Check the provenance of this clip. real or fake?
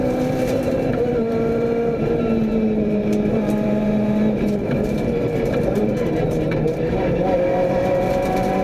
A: fake